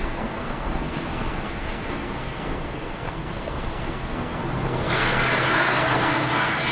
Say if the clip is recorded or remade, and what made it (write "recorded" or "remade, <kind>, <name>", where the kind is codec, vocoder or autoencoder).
remade, codec, SNAC